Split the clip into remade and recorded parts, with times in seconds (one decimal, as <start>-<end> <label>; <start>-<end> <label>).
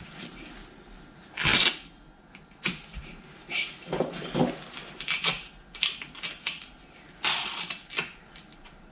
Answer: 0.0-8.9 recorded